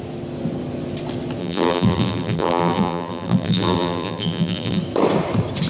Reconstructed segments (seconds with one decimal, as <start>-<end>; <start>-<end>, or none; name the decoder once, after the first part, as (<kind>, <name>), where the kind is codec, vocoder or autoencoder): 1.4-4.8 (vocoder, BigVGAN v2)